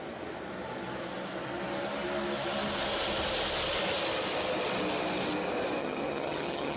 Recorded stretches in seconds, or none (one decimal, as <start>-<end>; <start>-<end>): 0.0-5.8